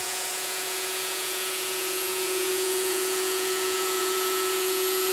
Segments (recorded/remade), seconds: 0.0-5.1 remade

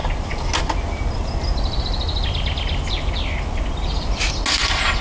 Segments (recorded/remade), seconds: 0.0-5.0 recorded

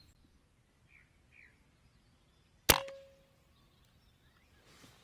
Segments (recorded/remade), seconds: 0.0-5.0 recorded

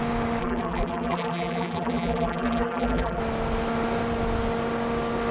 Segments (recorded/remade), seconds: 0.0-0.4 recorded; 0.4-3.2 remade; 3.2-5.3 recorded